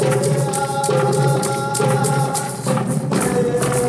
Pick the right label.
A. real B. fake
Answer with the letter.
A